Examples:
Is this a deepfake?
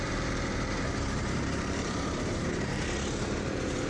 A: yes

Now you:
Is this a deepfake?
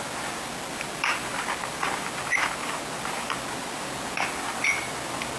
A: no